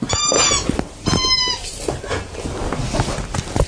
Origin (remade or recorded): recorded